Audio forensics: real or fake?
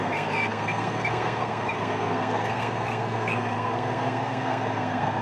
fake